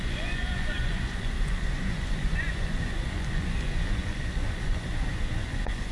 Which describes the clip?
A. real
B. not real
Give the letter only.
B